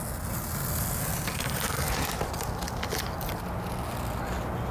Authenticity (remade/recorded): recorded